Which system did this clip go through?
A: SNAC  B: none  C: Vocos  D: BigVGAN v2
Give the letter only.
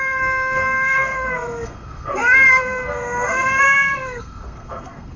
A